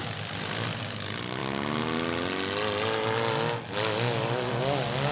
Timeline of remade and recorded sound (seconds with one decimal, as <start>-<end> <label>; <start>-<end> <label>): 0.0-5.1 recorded